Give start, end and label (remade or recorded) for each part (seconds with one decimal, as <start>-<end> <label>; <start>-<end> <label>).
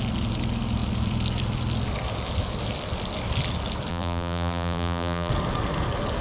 0.0-3.9 recorded; 3.9-5.3 remade; 5.3-6.2 recorded